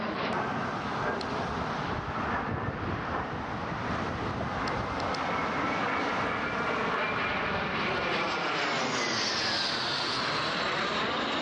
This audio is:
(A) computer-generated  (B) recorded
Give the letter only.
B